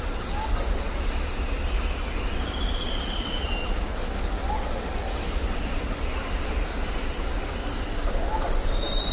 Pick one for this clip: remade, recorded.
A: recorded